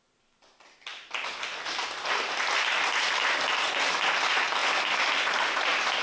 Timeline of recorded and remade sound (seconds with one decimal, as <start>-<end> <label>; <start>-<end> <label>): 0.0-6.0 recorded